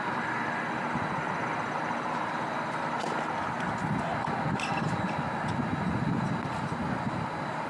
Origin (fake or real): real